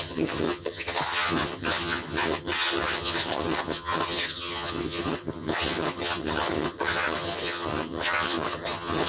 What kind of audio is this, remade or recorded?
remade